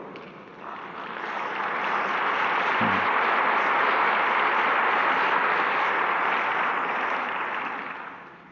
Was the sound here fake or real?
real